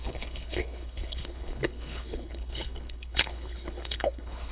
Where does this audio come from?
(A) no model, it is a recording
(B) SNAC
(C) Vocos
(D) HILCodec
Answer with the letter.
D